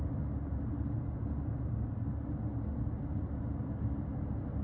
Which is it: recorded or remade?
recorded